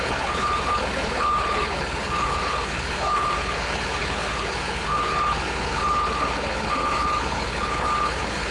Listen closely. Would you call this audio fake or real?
fake